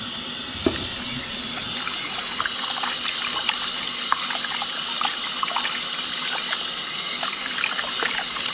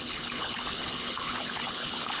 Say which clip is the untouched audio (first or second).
first